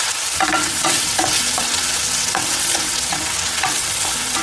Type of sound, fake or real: fake